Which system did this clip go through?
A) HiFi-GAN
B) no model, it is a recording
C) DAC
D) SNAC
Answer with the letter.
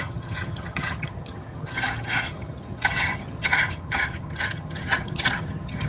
A